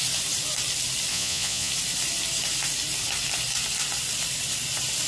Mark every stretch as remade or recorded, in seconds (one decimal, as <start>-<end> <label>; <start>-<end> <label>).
0.0-1.1 recorded; 1.1-1.7 remade; 1.7-5.1 recorded